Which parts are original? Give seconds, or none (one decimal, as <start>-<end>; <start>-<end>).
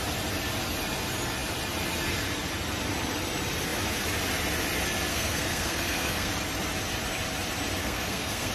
0.0-5.1; 6.3-7.8